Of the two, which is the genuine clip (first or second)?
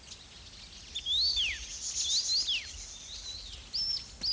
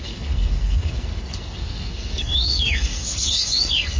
first